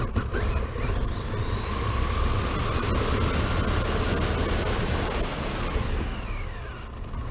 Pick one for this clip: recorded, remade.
recorded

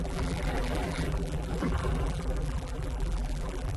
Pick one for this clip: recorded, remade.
remade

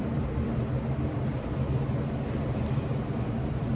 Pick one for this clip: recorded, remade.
remade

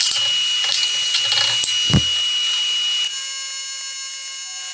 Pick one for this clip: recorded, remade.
recorded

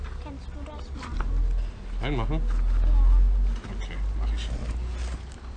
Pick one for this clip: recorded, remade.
recorded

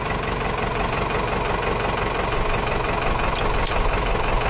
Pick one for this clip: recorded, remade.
recorded